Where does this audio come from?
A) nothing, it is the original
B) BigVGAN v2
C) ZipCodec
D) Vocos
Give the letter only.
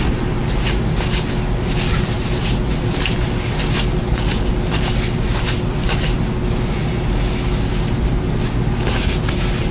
A